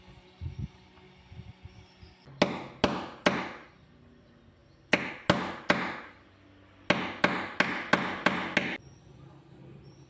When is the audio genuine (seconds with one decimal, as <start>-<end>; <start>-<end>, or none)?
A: 0.0-10.1